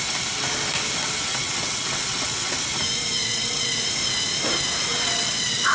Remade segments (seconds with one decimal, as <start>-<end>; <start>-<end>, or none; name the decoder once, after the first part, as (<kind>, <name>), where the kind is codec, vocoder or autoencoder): 1.3-2.6 (vocoder, WaveNeXt); 3.2-3.8; 4.9-5.7